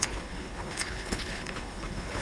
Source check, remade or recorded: remade